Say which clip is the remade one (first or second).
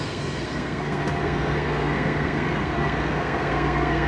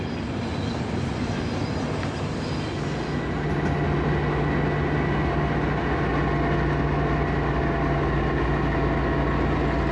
first